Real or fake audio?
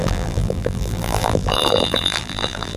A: fake